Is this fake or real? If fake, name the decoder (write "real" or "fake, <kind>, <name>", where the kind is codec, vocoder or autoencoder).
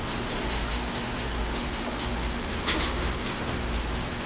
fake, autoencoder, DAC-VAE